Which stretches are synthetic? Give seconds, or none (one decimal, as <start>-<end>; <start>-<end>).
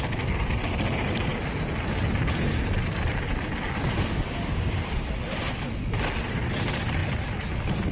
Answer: none